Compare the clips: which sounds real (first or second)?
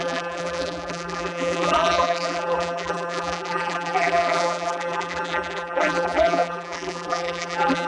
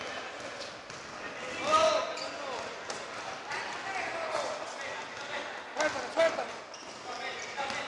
second